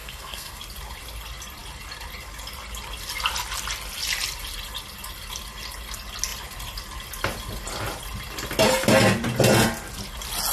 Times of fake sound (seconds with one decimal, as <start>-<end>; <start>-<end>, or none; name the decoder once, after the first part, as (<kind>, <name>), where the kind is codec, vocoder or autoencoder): 0.0-0.6 (codec, SNAC)

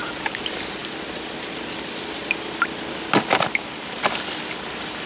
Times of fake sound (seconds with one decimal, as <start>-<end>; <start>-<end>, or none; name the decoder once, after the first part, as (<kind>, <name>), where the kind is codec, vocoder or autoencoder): none

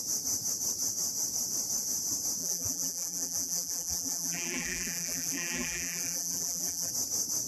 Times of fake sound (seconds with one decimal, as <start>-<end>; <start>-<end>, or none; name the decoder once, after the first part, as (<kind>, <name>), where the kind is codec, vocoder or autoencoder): 2.4-6.9 (vocoder, BigVGAN v2)

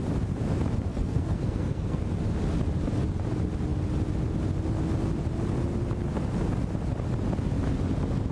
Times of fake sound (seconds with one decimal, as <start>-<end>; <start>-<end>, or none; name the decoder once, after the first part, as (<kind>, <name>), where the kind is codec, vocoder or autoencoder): 0.9-2.0 (codec, SNAC)